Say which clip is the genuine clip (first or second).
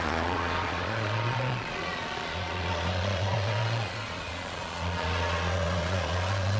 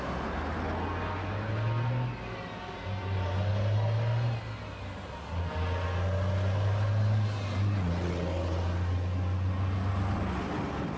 second